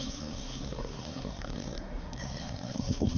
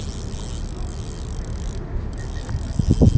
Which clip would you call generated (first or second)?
first